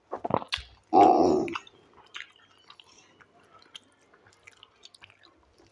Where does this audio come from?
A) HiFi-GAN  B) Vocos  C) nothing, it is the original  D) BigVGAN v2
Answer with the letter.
C